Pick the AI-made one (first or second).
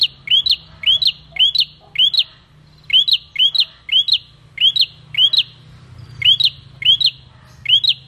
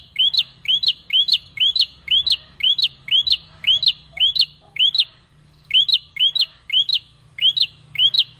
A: second